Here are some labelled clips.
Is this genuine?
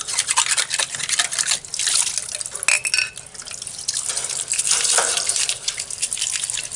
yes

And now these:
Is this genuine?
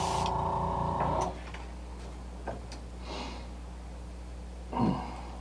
yes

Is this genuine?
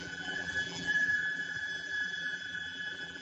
no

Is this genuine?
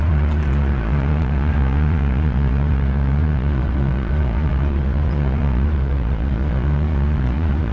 no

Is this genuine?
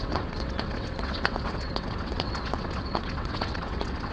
no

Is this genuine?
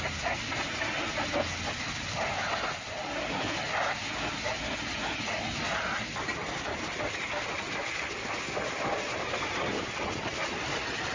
yes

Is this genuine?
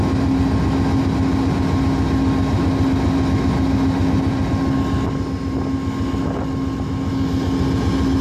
yes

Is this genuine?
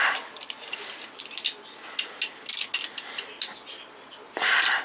yes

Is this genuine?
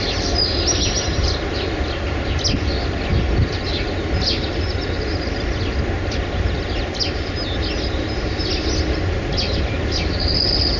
yes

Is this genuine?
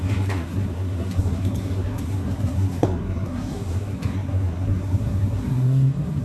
no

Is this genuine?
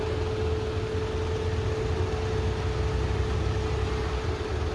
yes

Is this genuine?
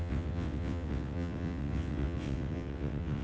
no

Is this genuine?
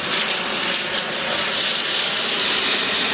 yes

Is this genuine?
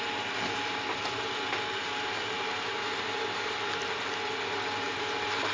yes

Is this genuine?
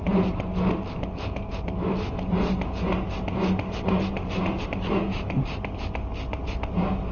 yes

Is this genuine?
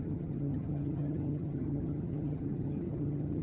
no